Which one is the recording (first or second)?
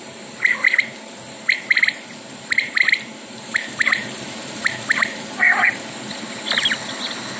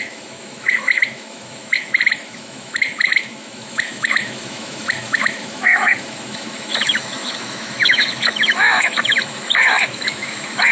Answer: first